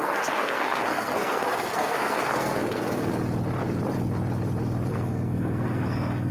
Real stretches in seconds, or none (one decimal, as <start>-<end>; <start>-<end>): 3.1-4.9